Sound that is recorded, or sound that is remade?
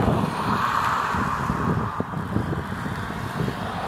recorded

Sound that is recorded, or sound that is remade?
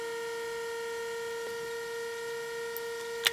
recorded